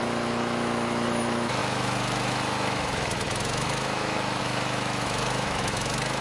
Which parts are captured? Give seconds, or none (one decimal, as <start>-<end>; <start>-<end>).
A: none